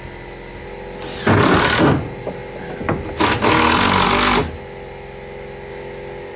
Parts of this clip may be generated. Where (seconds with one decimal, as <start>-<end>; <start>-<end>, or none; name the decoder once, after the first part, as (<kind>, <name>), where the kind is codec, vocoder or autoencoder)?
none